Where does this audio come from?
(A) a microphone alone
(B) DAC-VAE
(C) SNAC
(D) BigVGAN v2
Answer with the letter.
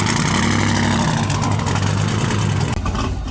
A